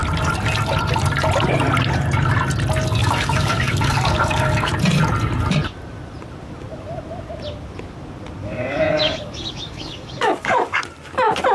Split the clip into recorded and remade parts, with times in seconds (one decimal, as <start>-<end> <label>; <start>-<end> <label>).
0.0-3.0 recorded; 3.0-4.7 remade; 4.7-8.4 recorded; 8.4-10.8 remade; 10.8-11.5 recorded